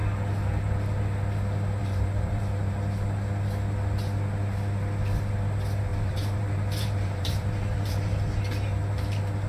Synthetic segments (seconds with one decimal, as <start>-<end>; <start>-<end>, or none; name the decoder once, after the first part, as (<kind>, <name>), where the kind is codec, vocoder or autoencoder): 1.8-2.7 (vocoder, BigVGAN v2); 5.9-7.9